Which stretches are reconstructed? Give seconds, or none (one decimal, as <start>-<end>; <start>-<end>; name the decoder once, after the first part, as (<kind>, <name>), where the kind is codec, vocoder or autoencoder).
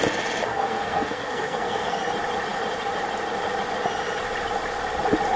0.5-2.0 (codec, SNAC)